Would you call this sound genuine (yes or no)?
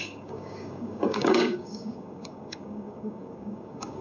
no